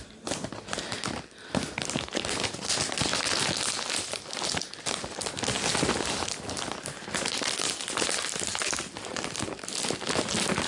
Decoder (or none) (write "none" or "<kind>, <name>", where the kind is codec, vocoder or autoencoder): none